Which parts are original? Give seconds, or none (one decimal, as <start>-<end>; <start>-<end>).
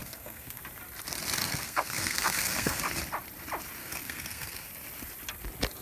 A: 0.6-1.4; 2.8-3.8; 4.7-5.8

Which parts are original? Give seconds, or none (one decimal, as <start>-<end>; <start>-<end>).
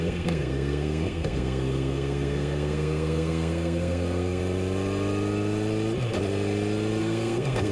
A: 4.4-7.0